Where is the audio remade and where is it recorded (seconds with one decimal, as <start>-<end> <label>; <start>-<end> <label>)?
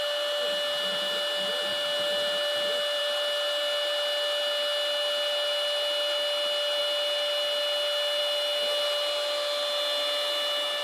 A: 0.0-10.8 recorded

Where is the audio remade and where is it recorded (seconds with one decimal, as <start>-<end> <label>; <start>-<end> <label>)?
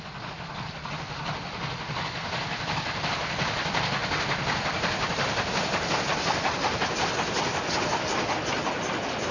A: 0.0-4.0 recorded; 4.0-5.9 remade; 5.9-9.3 recorded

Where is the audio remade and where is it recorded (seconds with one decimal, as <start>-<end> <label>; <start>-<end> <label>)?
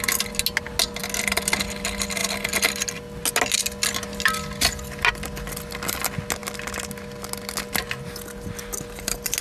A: 0.0-9.4 recorded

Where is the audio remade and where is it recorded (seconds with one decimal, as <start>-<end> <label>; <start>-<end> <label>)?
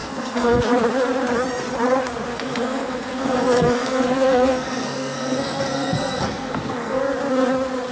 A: 0.0-0.6 remade; 0.6-2.3 recorded; 2.3-7.0 remade; 7.0-7.9 recorded